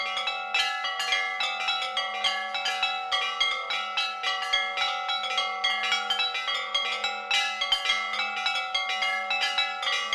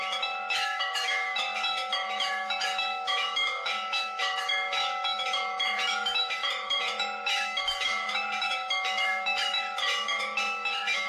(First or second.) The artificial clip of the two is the second